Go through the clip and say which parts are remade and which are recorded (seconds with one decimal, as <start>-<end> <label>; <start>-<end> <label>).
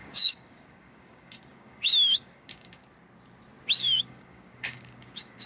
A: 0.0-2.8 remade; 2.8-3.8 recorded; 3.8-5.5 remade